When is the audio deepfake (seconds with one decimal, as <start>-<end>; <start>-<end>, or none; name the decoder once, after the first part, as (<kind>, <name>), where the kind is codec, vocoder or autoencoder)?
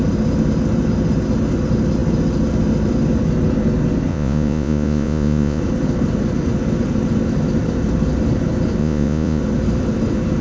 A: 4.1-5.6 (vocoder, Vocos); 8.8-9.4